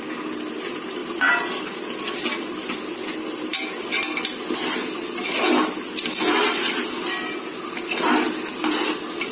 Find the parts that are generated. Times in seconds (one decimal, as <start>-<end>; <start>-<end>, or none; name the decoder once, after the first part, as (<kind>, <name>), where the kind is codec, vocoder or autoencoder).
none